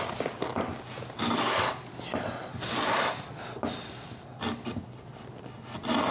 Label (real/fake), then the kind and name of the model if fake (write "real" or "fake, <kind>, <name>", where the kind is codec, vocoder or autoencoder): real